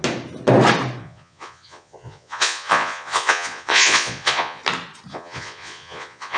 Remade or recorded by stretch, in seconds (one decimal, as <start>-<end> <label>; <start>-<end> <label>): 0.0-1.0 recorded; 1.0-4.6 remade; 4.6-5.1 recorded; 5.1-6.4 remade

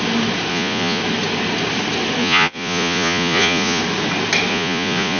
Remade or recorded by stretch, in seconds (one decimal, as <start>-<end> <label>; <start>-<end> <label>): 0.0-0.5 recorded; 0.5-1.0 remade; 1.0-2.2 recorded; 2.2-3.8 remade; 3.8-4.5 recorded; 4.5-5.2 remade

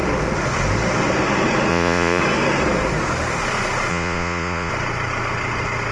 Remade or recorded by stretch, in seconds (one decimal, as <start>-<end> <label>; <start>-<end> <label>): 0.0-1.7 recorded; 1.7-2.2 remade; 2.2-3.9 recorded; 3.9-4.7 remade; 4.7-5.9 recorded

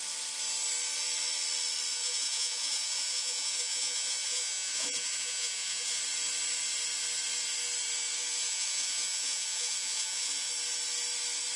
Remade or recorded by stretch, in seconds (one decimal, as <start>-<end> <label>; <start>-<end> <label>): 0.0-1.9 recorded; 1.9-6.0 remade; 6.0-8.4 recorded; 8.4-10.5 remade; 10.5-11.6 recorded

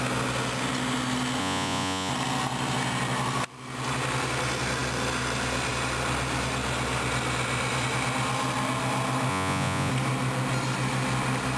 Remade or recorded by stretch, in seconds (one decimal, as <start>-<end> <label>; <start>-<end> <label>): 0.0-1.4 recorded; 1.4-2.1 remade; 2.1-9.3 recorded; 9.3-9.9 remade; 9.9-11.6 recorded

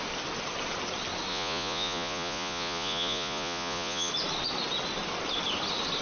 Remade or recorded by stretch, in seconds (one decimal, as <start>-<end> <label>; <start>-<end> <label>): 0.0-1.3 recorded; 1.3-4.1 remade; 4.1-6.0 recorded

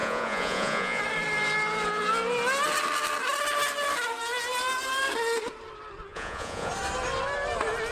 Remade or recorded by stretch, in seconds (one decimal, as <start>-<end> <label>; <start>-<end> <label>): 0.0-1.0 remade; 1.0-6.1 recorded; 6.1-6.7 remade; 6.7-7.9 recorded

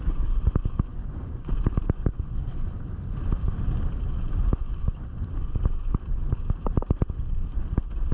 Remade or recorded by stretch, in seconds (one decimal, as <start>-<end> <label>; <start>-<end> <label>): 0.0-0.9 recorded; 0.9-1.5 remade; 1.5-8.1 recorded